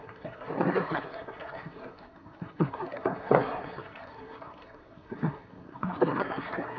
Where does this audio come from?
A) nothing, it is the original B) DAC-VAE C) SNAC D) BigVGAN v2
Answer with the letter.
C